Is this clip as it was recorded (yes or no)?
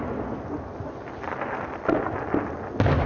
yes